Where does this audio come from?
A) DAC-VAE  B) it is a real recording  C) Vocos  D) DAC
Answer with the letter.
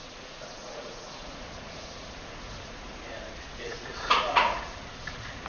C